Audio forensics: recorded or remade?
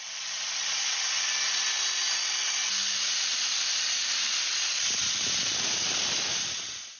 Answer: recorded